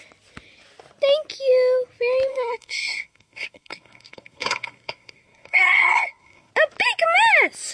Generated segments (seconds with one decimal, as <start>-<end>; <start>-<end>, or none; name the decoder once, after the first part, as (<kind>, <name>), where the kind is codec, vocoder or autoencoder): 2.3-6.5 (codec, SNAC)